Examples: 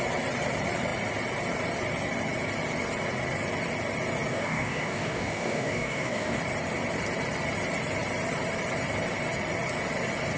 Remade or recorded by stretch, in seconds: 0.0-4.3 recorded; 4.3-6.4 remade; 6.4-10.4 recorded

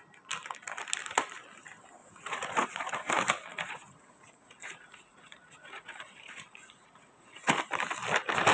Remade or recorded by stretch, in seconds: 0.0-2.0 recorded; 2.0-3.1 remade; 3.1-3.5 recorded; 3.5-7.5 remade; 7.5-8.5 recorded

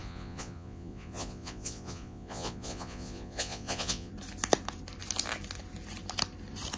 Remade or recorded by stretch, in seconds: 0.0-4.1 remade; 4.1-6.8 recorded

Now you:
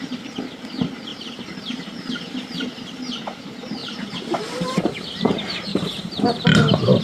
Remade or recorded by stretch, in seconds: 0.0-1.1 recorded; 1.1-2.2 remade; 2.2-3.8 recorded; 3.8-5.3 remade; 5.3-5.7 recorded; 5.7-6.4 remade; 6.4-7.0 recorded

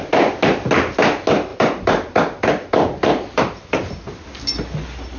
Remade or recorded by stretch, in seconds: 0.0-1.5 recorded; 1.5-4.0 remade; 4.0-5.2 recorded

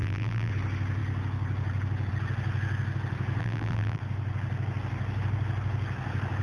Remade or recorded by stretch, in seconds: 0.0-0.5 remade; 0.5-3.4 recorded; 3.4-4.0 remade; 4.0-6.4 recorded